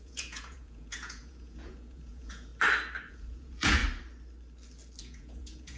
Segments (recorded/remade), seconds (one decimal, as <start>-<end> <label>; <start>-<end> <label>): 0.0-2.5 remade; 2.5-3.1 recorded; 3.1-3.8 remade; 3.8-5.0 recorded; 5.0-5.8 remade